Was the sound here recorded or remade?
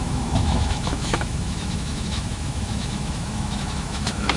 remade